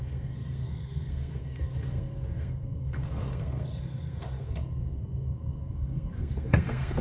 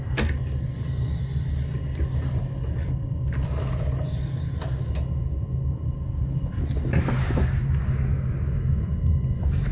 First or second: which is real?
second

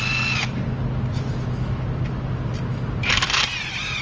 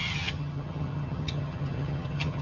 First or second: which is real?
first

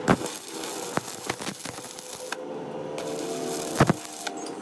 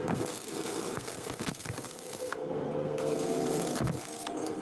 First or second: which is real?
first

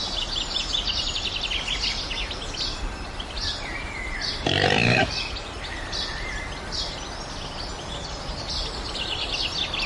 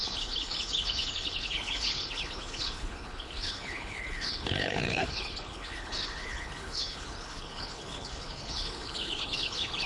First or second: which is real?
first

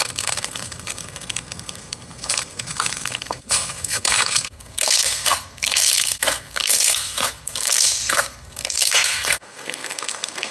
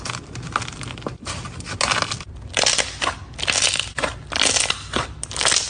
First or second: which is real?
second